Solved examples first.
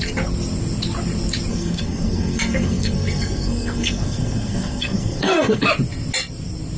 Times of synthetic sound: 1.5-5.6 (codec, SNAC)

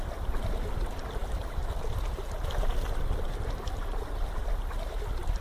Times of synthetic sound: none